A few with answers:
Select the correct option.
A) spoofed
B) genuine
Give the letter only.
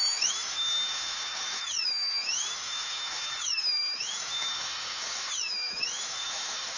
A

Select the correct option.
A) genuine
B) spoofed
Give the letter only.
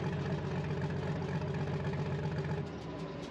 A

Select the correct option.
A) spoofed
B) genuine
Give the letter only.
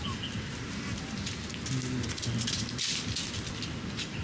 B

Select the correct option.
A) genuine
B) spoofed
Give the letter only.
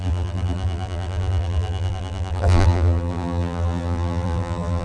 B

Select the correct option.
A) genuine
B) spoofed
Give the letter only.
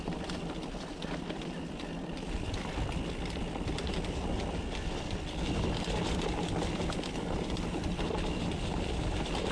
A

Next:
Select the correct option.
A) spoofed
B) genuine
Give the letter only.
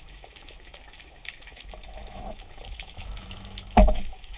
A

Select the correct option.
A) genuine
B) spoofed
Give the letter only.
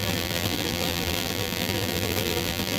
B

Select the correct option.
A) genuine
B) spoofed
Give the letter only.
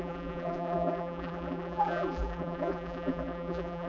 B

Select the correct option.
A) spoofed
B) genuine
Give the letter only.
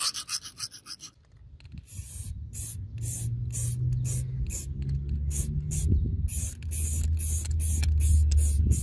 B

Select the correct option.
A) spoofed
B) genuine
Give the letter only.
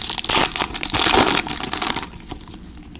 B